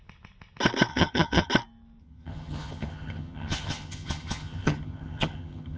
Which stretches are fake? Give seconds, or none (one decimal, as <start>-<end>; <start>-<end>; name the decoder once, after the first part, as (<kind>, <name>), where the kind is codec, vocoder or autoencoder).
0.9-1.5 (vocoder, HiFi-GAN); 2.0-5.8